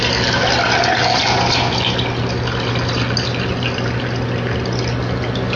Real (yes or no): yes